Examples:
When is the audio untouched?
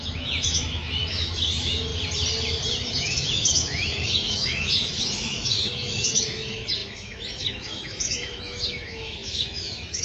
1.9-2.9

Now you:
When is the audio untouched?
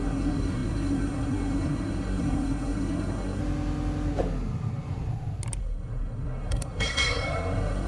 3.4-5.6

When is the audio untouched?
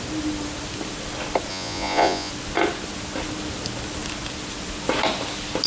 0.0-1.5; 2.3-5.7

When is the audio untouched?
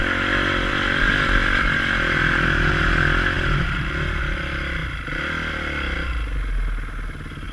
0.0-7.5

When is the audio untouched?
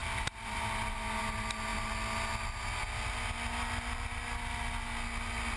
0.0-5.6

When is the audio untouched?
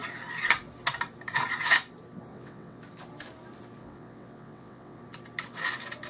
0.0-2.3; 2.8-3.8; 5.0-6.1